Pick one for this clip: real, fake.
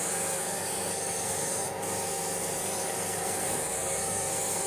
fake